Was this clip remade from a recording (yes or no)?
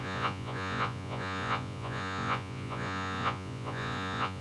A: yes